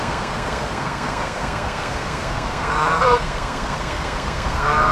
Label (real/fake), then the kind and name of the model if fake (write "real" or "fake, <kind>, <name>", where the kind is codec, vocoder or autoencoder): fake, codec, SNAC